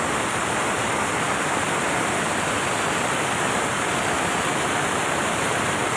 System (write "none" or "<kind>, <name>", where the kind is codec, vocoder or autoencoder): none